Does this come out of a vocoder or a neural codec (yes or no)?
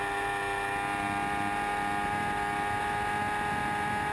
no